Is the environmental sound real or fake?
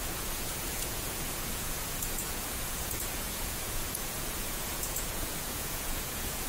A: fake